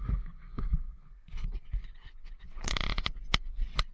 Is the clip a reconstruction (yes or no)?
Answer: yes